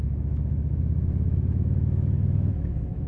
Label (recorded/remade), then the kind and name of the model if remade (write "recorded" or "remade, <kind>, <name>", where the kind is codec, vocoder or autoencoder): remade, autoencoder, DAC-VAE